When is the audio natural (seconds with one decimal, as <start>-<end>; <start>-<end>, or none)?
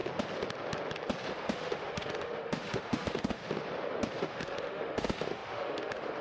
0.0-1.3; 3.4-4.2